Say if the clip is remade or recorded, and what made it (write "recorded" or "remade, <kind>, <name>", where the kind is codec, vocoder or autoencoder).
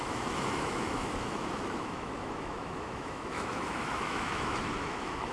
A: remade, autoencoder, DAC-VAE